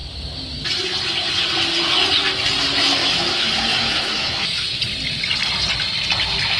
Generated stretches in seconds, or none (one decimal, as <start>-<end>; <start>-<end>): 3.0-4.8